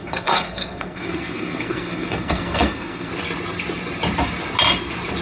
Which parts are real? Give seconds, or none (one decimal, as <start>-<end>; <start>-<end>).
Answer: 3.1-5.2